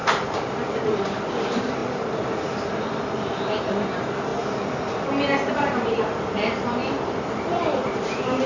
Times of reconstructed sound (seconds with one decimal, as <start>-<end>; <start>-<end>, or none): 0.0-4.3; 5.5-6.8; 7.3-8.5